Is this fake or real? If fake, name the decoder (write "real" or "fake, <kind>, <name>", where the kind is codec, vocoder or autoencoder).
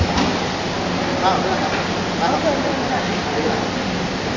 real